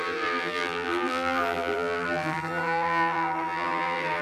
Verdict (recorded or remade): remade